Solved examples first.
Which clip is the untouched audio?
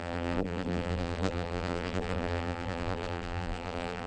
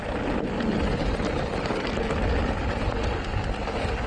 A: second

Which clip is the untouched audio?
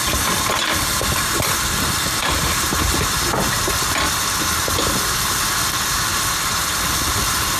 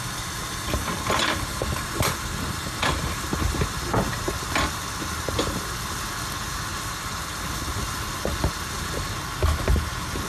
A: second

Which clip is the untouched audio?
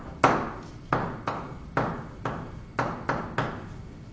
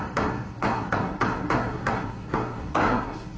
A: first